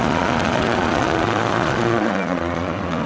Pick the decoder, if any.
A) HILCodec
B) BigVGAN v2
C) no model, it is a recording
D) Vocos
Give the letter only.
D